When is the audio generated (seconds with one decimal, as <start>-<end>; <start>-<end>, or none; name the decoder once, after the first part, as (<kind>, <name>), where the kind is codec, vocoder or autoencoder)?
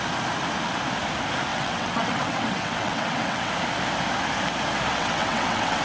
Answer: 1.5-3.5 (vocoder, WaveNeXt); 4.9-5.8